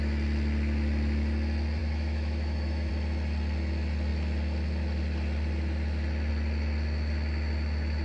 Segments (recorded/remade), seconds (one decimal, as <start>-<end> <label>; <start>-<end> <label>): 0.0-1.8 recorded; 1.8-2.9 remade; 2.9-8.0 recorded